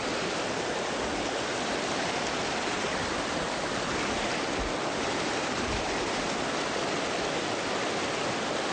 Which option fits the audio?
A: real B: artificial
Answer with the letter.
A